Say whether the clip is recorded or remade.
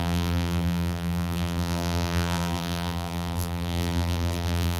remade